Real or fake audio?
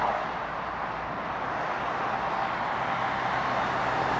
real